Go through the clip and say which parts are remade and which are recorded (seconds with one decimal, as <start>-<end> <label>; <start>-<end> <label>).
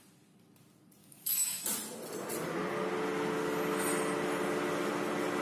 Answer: 0.0-1.0 recorded; 1.0-1.6 remade; 1.6-5.4 recorded